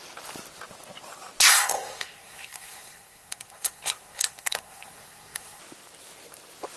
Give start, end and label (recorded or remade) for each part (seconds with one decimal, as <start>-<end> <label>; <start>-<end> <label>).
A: 0.0-1.5 recorded; 1.5-5.6 remade; 5.6-6.8 recorded